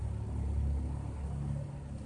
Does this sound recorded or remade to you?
recorded